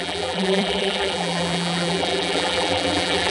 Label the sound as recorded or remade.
remade